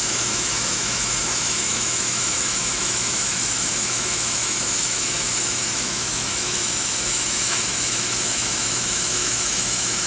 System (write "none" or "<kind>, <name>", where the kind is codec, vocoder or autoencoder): autoencoder, DAC-VAE